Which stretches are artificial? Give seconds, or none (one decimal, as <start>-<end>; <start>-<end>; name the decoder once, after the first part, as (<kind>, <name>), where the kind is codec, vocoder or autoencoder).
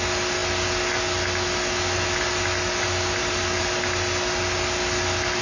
none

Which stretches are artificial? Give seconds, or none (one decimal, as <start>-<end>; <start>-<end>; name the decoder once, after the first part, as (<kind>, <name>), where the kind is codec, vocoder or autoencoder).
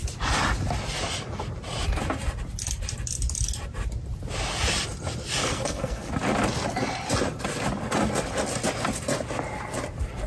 5.4-6.1 (codec, SNAC)